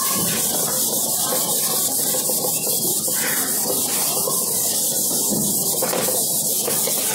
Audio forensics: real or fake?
real